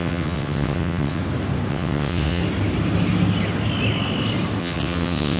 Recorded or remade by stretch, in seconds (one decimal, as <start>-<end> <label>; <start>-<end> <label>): 0.0-1.2 remade; 1.2-1.7 recorded; 1.7-2.4 remade; 2.4-4.6 recorded; 4.6-5.4 remade